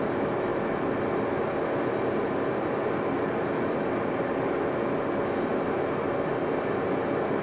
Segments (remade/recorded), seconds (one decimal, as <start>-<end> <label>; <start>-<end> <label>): 0.0-7.4 recorded